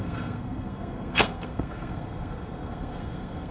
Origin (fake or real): fake